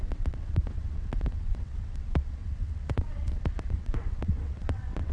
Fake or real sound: fake